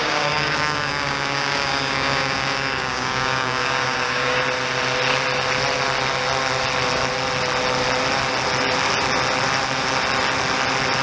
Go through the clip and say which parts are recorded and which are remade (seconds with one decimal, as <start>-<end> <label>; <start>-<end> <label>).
0.0-4.4 remade; 4.4-11.0 recorded